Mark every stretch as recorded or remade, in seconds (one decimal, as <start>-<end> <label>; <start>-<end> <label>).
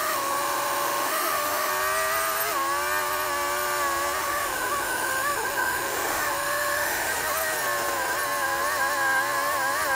0.0-1.7 remade; 1.7-4.2 recorded; 4.2-7.1 remade; 7.1-9.9 recorded